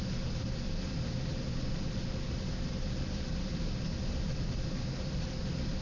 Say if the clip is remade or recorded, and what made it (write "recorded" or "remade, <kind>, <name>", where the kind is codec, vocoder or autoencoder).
recorded